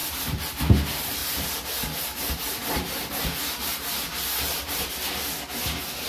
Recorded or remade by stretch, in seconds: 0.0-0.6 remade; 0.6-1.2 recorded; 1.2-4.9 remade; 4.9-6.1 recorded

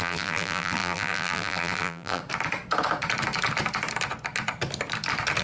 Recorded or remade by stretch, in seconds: 0.0-2.2 remade; 2.2-5.4 recorded

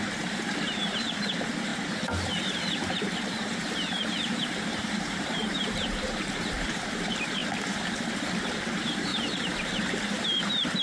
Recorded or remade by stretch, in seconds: 0.0-1.7 recorded; 1.7-6.7 remade; 6.7-9.1 recorded; 9.1-10.8 remade

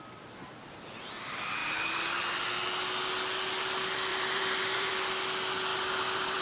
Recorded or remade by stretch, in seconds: 0.0-1.6 recorded; 1.6-2.4 remade; 2.4-4.1 recorded; 4.1-4.9 remade; 4.9-5.7 recorded; 5.7-6.4 remade